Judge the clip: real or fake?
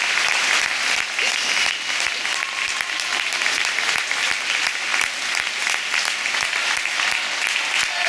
real